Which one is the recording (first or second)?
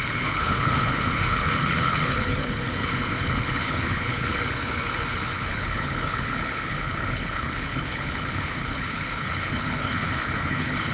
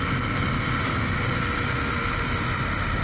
second